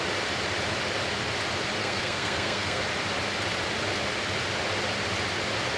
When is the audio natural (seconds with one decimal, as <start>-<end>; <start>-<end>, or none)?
0.0-1.8; 2.8-5.8